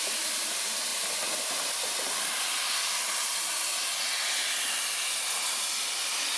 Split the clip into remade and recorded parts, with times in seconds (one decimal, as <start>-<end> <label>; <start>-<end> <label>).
0.0-6.4 recorded